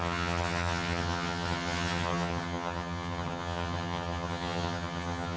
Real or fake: fake